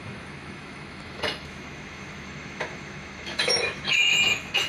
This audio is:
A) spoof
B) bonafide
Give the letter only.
A